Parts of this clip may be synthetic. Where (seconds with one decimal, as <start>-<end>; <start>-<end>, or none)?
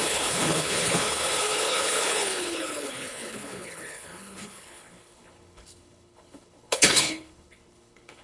0.0-8.2